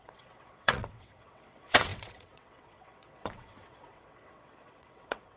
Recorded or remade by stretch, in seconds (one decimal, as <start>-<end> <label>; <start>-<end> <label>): 0.0-5.4 remade

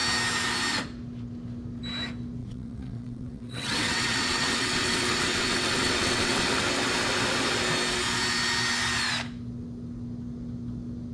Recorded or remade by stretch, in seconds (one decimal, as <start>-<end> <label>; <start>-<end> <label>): 0.0-2.4 recorded; 2.4-6.7 remade; 6.7-11.1 recorded

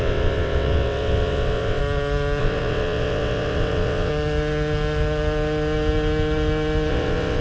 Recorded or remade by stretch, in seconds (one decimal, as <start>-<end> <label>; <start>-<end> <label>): 0.0-1.8 remade; 1.8-2.4 recorded; 2.4-4.1 remade; 4.1-6.9 recorded; 6.9-7.4 remade

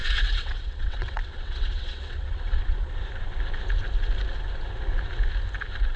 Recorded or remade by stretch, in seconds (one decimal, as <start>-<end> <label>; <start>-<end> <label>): 0.0-2.9 remade; 2.9-6.0 recorded

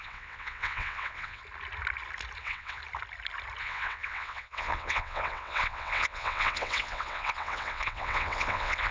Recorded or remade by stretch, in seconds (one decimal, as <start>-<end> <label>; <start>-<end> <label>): 0.0-1.4 remade; 1.4-2.4 recorded; 2.4-2.8 remade; 2.8-3.6 recorded; 3.6-8.9 remade

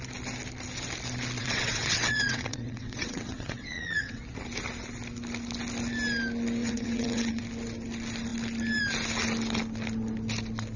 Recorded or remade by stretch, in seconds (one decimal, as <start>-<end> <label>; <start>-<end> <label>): 0.0-1.4 recorded; 1.4-4.2 remade; 4.2-6.6 recorded; 6.6-7.4 remade; 7.4-10.8 recorded